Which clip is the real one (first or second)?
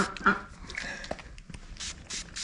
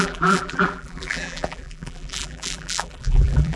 first